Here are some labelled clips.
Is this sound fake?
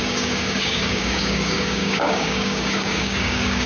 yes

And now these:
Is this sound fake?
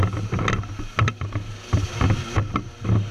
no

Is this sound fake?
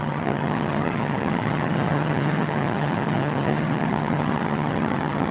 yes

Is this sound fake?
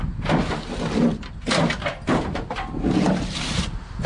no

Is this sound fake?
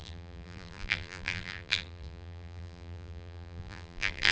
yes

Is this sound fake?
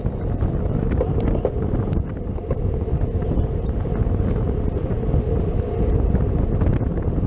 no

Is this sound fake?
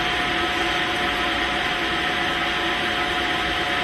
no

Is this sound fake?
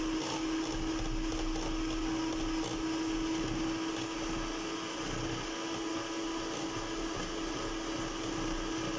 no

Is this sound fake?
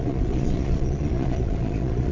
yes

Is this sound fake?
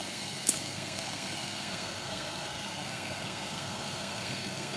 yes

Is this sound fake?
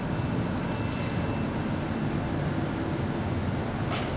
no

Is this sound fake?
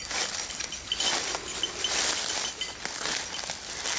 no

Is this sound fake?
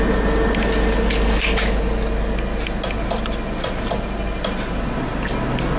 no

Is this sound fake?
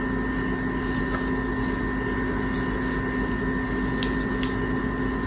no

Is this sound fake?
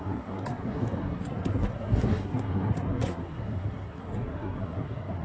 yes